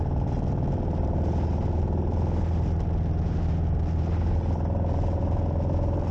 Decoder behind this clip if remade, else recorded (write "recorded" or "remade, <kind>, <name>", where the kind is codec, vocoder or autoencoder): recorded